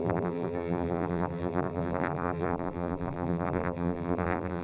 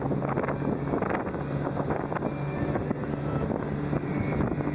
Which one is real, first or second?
second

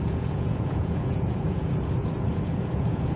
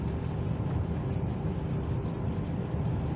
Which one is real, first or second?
second